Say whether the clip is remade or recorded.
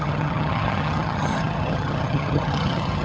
remade